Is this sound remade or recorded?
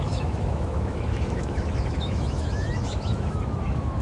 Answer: remade